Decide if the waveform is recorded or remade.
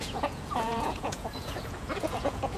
remade